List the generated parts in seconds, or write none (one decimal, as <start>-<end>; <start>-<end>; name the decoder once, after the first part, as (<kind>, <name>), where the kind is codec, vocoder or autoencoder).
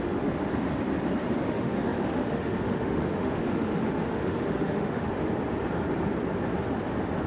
0.0-0.5 (autoencoder, DAC-VAE); 1.4-5.3